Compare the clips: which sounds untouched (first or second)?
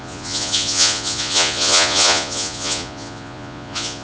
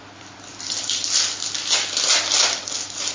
second